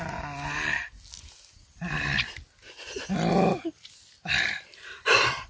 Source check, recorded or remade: recorded